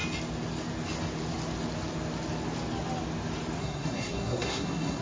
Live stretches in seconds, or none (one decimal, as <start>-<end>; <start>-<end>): 0.0-3.6